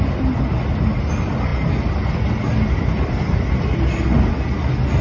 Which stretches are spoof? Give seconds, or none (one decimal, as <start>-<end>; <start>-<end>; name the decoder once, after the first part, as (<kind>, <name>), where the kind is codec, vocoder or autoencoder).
none